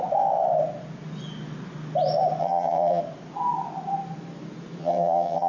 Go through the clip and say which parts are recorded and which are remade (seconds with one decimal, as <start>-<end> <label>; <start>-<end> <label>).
0.0-2.4 recorded; 2.4-3.0 remade; 3.0-4.8 recorded; 4.8-5.5 remade